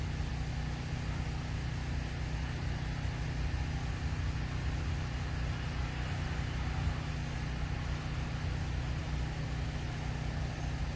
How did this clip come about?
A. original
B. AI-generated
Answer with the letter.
A